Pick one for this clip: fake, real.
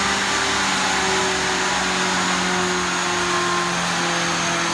real